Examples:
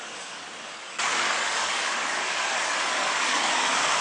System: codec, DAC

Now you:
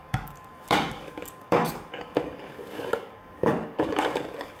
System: codec, DAC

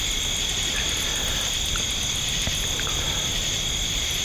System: none